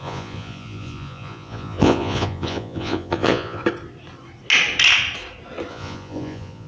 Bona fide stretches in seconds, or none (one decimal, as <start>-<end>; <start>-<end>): 3.6-5.7